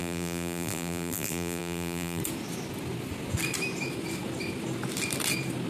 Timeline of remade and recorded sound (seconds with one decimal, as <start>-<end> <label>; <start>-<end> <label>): 0.0-2.2 remade; 2.2-5.7 recorded